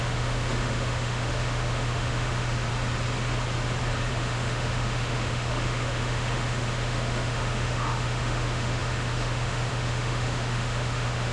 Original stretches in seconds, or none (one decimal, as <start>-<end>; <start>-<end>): 2.7-4.1